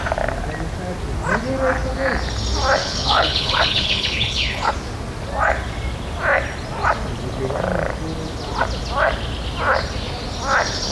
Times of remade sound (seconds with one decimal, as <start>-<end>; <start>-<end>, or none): 2.8-4.7